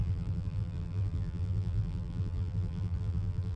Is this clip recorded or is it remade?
remade